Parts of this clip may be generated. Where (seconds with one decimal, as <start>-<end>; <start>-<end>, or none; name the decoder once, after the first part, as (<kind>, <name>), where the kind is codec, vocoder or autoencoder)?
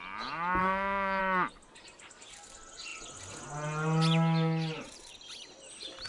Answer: 0.6-1.2 (autoencoder, DAC-VAE)